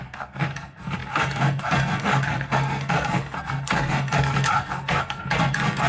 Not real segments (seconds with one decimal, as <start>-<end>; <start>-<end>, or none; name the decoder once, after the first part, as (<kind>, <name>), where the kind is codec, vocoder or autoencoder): 0.0-5.9 (codec, SNAC)